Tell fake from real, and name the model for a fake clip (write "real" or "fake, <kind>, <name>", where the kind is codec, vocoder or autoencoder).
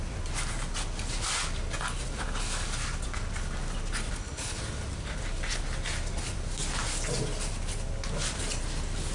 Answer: real